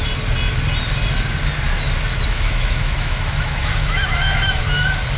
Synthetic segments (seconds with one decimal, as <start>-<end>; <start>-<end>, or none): 2.1-4.6